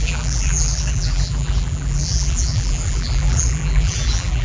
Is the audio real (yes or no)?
no